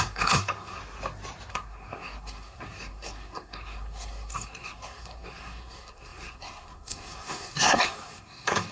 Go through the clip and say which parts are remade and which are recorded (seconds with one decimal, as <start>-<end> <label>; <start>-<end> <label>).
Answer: 0.0-0.8 remade; 0.8-1.5 recorded; 1.5-8.7 remade